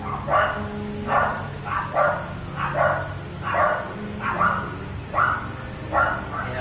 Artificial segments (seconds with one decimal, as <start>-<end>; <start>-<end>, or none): none